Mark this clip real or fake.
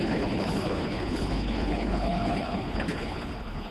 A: fake